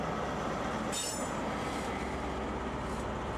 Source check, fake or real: real